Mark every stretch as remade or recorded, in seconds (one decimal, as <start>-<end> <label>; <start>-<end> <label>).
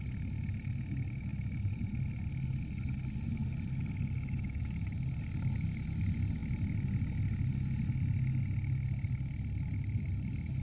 0.0-10.6 recorded